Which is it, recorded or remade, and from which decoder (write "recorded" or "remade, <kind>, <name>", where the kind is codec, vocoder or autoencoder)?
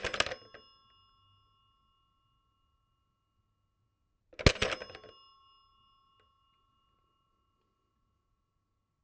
recorded